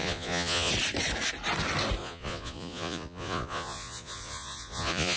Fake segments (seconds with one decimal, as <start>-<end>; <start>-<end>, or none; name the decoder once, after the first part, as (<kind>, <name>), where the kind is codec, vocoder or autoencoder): 0.0-0.7 (vocoder, Vocos); 2.0-5.2